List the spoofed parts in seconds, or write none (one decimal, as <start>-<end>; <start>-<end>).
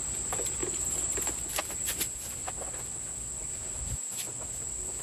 0.0-0.6; 1.7-2.4